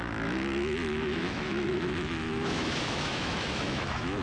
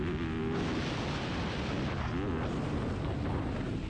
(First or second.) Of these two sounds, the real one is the second